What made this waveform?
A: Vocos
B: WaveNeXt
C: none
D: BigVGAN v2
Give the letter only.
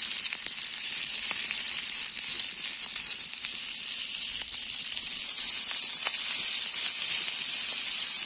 C